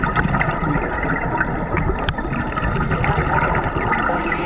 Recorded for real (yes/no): yes